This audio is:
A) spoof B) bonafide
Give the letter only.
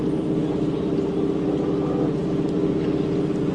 B